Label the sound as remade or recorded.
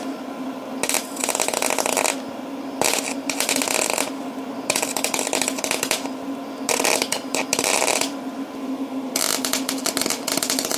recorded